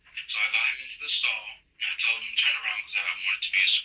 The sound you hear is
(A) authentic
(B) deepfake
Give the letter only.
A